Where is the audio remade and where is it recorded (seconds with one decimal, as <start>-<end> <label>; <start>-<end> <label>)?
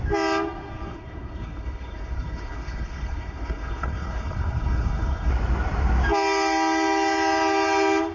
0.0-0.9 recorded; 0.9-5.3 remade; 5.3-8.1 recorded